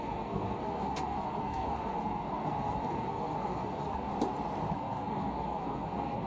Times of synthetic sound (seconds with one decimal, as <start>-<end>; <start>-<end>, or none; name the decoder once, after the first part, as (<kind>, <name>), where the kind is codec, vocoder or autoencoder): 0.0-4.1 (codec, SNAC); 4.7-6.3